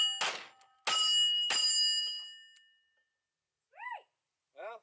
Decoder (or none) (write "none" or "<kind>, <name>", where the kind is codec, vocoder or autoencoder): none